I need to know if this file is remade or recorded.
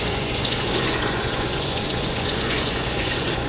remade